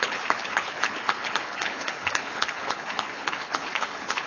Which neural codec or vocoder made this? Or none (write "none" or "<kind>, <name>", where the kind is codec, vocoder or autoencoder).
codec, HILCodec